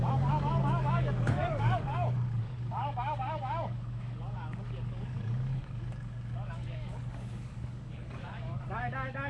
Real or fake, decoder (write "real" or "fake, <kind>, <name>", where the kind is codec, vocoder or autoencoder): fake, codec, DAC